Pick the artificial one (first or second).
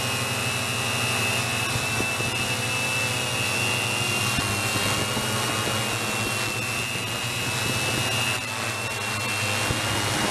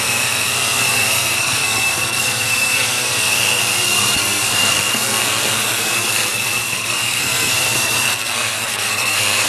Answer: second